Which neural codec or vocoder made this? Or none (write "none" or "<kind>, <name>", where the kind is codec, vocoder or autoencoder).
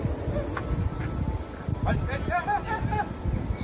none